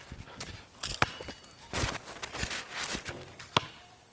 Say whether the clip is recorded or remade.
recorded